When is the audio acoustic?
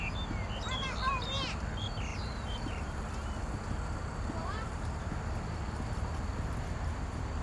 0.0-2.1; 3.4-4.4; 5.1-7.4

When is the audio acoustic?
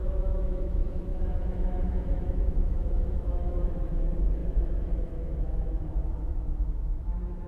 none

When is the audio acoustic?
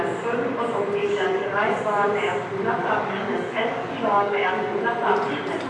0.0-1.0; 1.8-2.8; 4.8-5.7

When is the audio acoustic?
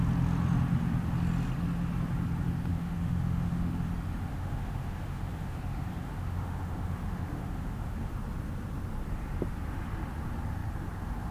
0.0-2.7; 3.9-4.3; 8.2-11.3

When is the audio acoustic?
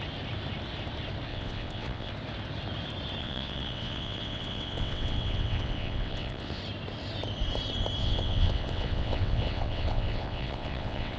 0.0-1.3; 2.1-3.2; 6.6-8.0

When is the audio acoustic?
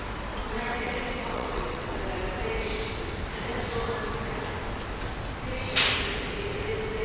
0.0-0.4; 2.0-7.0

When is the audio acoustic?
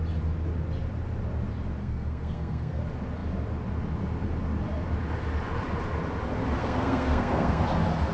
0.0-1.8; 2.8-6.6; 7.6-8.1